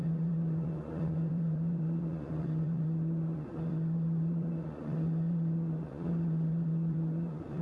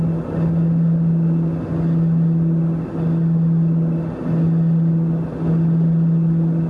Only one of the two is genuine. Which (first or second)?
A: second